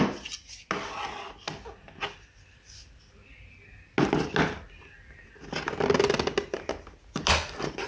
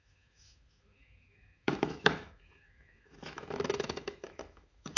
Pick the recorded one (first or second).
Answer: first